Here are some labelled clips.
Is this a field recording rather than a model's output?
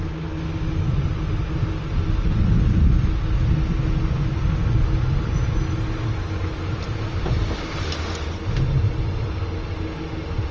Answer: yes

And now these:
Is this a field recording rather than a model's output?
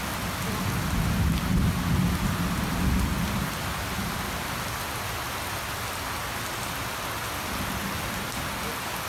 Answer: yes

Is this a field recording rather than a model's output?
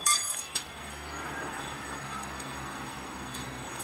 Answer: no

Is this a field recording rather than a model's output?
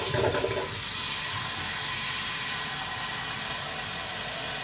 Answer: yes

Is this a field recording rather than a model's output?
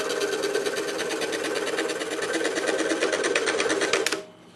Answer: yes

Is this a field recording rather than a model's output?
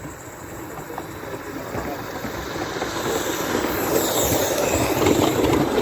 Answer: yes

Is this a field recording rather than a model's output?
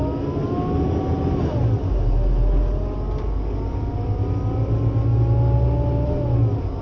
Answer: yes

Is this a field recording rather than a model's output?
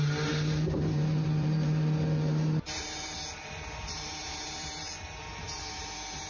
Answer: no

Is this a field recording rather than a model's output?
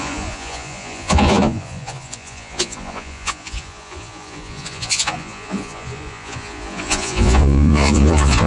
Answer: no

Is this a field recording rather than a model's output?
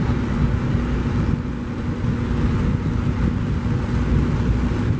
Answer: yes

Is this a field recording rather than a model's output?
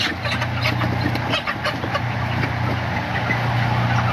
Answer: yes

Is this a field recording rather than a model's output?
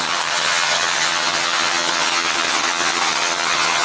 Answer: no